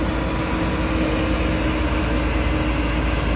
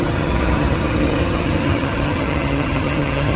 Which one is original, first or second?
first